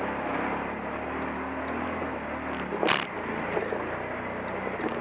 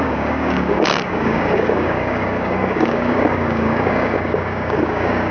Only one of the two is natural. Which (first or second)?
first